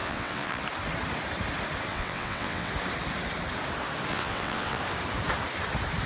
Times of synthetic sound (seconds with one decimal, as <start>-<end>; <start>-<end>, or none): 0.0-0.6; 1.9-2.7; 4.1-4.8